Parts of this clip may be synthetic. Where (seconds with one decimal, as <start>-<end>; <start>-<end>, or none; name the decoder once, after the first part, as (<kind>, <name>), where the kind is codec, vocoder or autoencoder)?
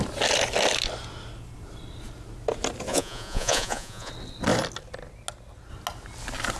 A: 2.9-4.1 (vocoder, Vocos)